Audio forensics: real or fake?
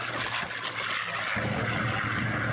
real